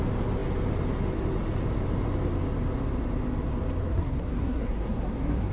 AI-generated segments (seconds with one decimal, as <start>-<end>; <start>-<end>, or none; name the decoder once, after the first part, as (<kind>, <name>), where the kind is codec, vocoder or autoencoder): 3.9-5.5 (codec, SNAC)